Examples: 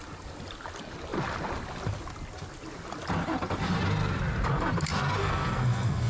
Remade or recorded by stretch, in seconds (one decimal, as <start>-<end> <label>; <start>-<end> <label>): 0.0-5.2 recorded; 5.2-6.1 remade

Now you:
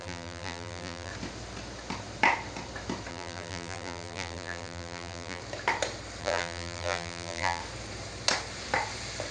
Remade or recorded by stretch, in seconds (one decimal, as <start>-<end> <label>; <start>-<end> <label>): 0.0-1.1 remade; 1.1-3.1 recorded; 3.1-5.4 remade; 5.4-6.2 recorded; 6.2-7.6 remade; 7.6-9.3 recorded

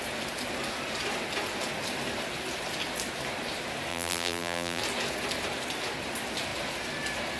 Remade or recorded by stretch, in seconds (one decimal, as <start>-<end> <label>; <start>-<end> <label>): 0.0-3.9 recorded; 3.9-4.8 remade; 4.8-7.4 recorded